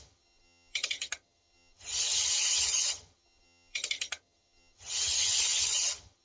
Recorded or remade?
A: remade